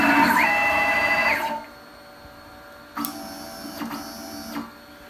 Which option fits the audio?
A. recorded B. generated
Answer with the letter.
A